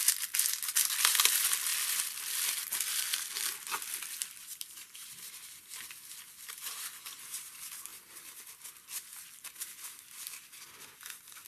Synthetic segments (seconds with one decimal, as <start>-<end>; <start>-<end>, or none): 4.4-5.5